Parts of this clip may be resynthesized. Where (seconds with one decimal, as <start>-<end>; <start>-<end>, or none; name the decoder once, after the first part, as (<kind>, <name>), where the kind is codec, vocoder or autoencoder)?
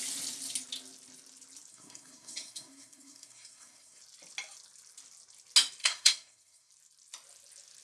1.7-4.0 (codec, SNAC); 5.8-6.7